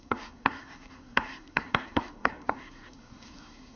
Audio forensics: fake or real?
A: fake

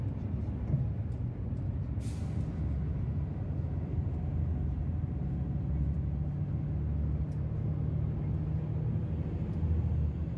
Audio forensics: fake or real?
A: real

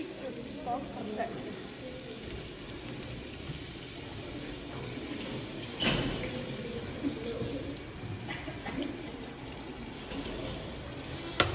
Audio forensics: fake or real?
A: real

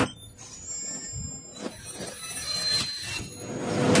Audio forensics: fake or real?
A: real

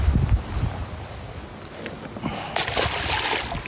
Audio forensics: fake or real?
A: real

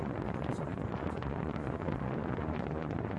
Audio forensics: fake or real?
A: fake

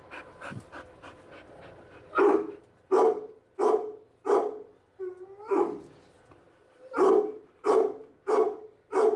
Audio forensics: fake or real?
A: real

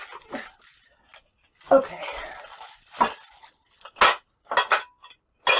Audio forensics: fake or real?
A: real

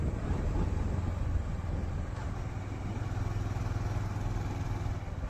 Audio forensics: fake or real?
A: real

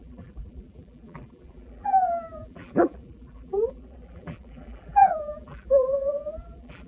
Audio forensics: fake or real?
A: fake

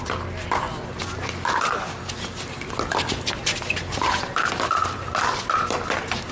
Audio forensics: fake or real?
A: fake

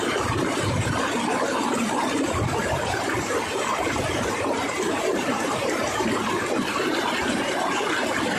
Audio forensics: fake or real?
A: fake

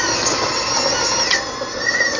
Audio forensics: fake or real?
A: real